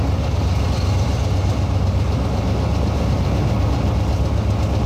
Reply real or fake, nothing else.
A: real